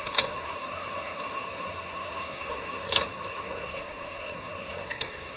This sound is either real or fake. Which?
fake